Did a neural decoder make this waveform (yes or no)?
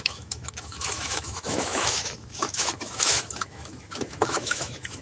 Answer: yes